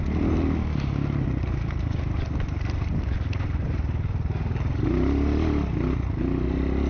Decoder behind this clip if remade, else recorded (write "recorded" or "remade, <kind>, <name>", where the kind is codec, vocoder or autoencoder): recorded